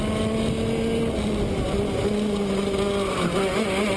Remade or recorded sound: recorded